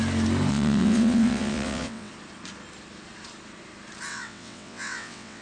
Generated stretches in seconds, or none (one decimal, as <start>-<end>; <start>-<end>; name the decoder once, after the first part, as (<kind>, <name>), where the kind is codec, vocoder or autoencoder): 0.5-2.1 (vocoder, WaveNeXt); 4.1-5.4